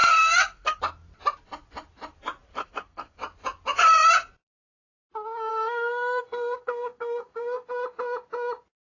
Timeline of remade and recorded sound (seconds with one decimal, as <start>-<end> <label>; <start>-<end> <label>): 0.0-0.8 remade; 0.8-2.6 recorded; 2.6-3.2 remade; 3.2-5.5 recorded; 5.5-7.7 remade; 7.7-8.9 recorded